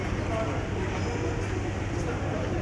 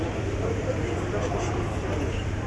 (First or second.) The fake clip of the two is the second